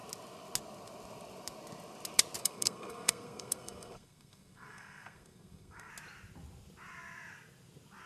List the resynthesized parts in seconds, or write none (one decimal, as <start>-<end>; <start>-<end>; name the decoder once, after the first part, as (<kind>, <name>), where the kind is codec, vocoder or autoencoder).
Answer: 2.4-5.9 (codec, SNAC)